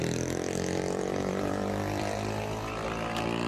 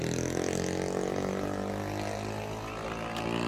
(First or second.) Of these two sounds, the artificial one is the first